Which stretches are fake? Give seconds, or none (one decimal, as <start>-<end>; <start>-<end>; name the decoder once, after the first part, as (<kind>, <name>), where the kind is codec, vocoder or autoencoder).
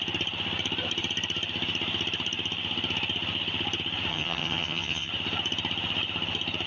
4.1-5.1 (vocoder, HiFi-GAN)